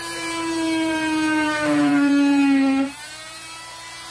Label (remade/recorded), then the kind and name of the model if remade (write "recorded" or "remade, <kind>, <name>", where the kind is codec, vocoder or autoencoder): remade, vocoder, BigVGAN v2